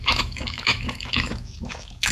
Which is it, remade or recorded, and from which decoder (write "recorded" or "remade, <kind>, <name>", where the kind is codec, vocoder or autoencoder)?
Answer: remade, autoencoder, DAC-VAE